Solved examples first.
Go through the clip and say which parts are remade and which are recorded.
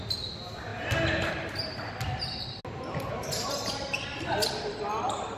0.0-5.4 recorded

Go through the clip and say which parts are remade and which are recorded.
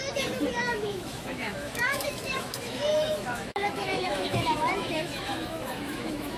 0.0-0.5 recorded; 0.5-6.4 remade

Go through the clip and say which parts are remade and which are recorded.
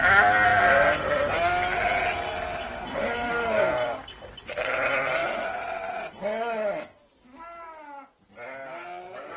0.0-9.4 recorded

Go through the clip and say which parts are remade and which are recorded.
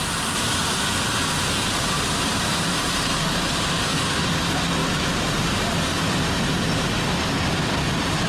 0.0-8.3 recorded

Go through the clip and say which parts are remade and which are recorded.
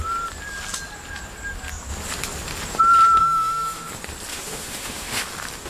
0.0-3.2 recorded; 3.2-3.9 remade; 3.9-4.3 recorded; 4.3-5.2 remade; 5.2-5.7 recorded